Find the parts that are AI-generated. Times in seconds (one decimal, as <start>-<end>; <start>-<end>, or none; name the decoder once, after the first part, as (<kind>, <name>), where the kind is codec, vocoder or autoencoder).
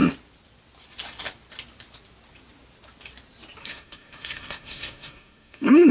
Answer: 3.6-5.9 (codec, SNAC)